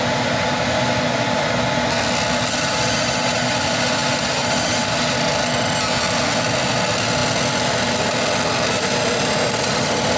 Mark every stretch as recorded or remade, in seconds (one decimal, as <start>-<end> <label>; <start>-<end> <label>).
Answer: 0.0-10.2 recorded